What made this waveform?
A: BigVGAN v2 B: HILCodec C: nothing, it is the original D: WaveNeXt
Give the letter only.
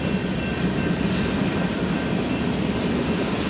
C